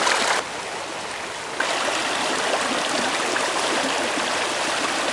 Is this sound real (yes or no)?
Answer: yes